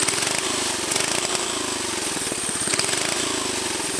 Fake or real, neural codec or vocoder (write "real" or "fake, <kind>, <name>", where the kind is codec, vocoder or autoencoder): real